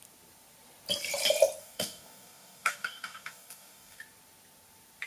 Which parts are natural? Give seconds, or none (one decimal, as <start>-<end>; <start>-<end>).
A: 0.0-1.6; 4.0-5.1